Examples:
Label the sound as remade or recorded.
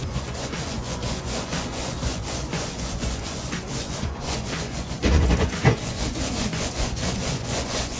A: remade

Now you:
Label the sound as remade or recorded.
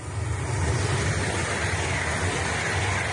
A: recorded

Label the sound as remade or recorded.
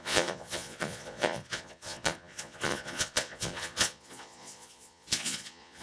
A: remade